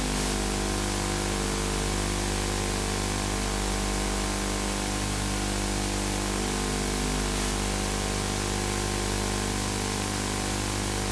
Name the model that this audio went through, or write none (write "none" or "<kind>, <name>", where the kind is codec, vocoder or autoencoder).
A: none